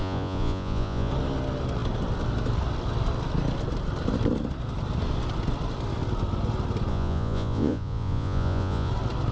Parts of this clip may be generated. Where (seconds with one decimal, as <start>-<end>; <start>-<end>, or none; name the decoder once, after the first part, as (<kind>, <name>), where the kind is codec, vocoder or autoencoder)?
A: 0.0-1.1 (vocoder, Vocos); 6.9-8.9